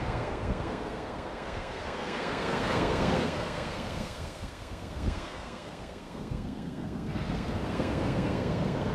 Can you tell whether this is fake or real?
fake